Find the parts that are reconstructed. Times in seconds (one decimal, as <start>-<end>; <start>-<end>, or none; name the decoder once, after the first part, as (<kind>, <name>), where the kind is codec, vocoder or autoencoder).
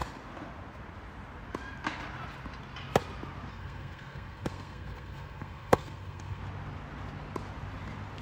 3.5-6.4 (codec, SNAC)